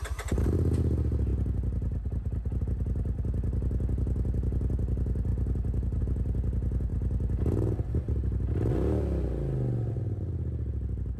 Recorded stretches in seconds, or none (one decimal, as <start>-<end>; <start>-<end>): 0.0-11.2